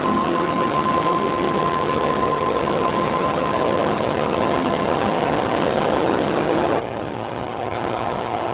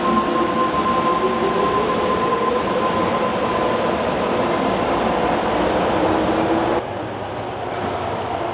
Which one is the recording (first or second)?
second